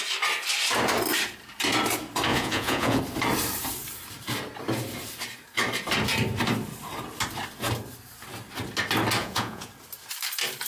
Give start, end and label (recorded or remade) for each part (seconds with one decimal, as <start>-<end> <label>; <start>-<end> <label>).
0.0-2.3 recorded; 2.3-3.0 remade; 3.0-9.2 recorded; 9.2-9.7 remade; 9.7-10.7 recorded